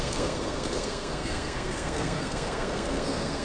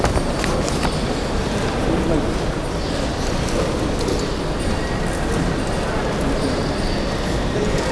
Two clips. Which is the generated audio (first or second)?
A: first